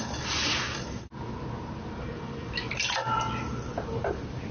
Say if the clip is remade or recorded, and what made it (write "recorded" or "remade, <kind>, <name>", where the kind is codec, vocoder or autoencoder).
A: recorded